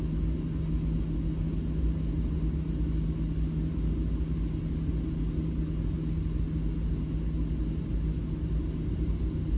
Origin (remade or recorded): recorded